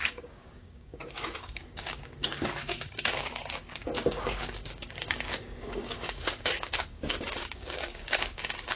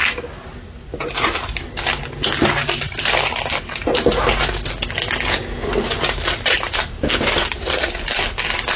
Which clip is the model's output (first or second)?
first